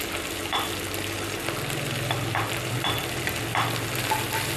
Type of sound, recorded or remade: recorded